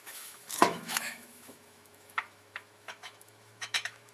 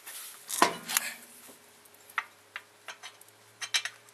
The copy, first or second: first